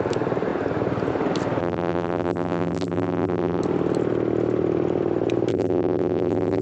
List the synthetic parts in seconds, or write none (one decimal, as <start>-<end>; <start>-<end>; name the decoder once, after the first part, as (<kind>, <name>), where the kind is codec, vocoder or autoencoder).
1.6-3.6 (vocoder, BigVGAN v2); 5.5-6.6